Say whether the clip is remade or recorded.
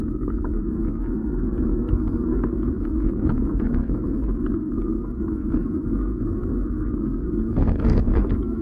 remade